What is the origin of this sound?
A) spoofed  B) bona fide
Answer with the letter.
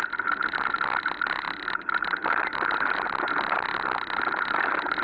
B